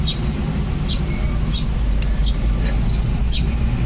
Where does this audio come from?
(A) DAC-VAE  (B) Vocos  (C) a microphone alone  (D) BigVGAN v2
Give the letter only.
C